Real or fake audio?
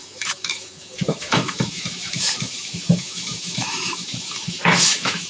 fake